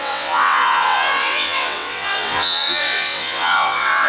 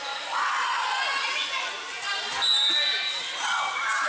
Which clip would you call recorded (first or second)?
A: second